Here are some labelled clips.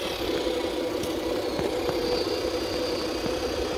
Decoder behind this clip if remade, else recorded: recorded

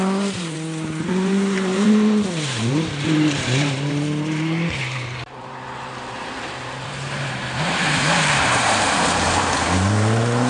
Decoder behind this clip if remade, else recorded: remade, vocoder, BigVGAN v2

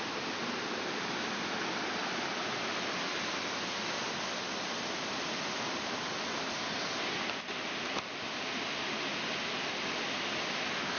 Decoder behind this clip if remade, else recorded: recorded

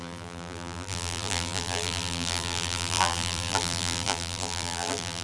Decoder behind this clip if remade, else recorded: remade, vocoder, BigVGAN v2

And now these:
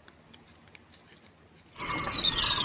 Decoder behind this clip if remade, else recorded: recorded